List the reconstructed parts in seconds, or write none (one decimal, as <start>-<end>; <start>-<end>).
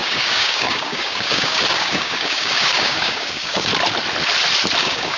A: 0.0-3.7; 4.8-5.2